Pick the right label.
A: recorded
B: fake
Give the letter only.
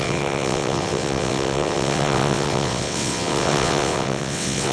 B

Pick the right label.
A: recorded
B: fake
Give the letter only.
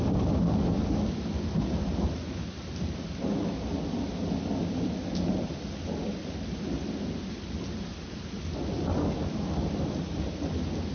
A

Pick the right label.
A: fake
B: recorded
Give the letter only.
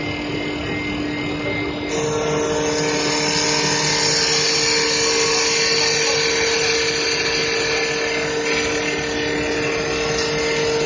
B